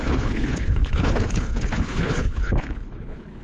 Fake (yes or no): yes